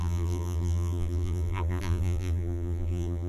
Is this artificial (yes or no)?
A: yes